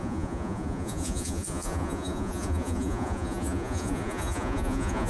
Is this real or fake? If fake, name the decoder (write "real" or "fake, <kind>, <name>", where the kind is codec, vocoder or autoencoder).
fake, vocoder, Vocos